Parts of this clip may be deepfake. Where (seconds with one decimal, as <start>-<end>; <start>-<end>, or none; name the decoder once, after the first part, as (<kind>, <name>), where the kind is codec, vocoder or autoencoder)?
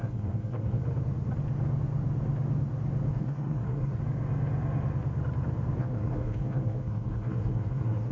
0.0-0.8 (codec, SNAC); 3.1-4.0; 5.8-8.1